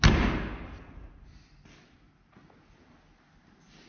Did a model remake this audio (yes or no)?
no